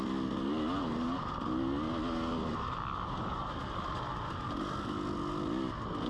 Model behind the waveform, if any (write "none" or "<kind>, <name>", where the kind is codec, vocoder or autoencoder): none